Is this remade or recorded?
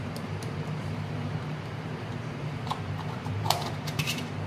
remade